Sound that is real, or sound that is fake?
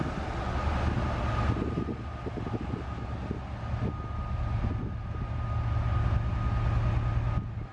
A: real